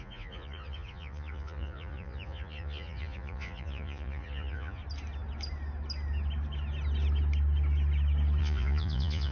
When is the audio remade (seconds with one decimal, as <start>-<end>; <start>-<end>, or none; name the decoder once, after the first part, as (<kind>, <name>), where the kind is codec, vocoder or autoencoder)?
0.0-4.8 (vocoder, Vocos); 8.4-9.3